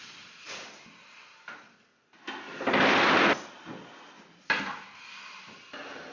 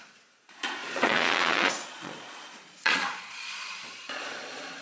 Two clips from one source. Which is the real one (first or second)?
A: first